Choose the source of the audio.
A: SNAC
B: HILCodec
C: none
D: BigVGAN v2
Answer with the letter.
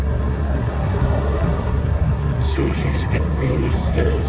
A